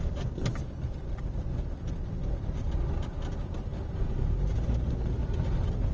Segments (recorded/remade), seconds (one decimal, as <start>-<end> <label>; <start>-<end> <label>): 0.0-5.9 recorded